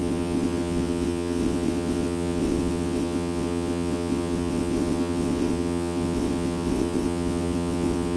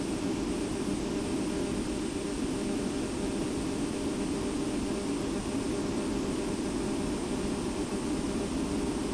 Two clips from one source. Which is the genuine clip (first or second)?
second